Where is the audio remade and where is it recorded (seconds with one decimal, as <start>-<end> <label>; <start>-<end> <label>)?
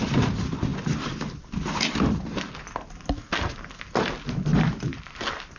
0.0-4.5 recorded; 4.5-5.0 remade; 5.0-5.6 recorded